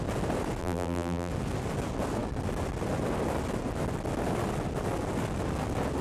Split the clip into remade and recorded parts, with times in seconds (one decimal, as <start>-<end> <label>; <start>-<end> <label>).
0.0-0.6 recorded; 0.6-1.3 remade; 1.3-6.0 recorded